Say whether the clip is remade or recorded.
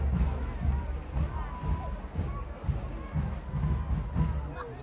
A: recorded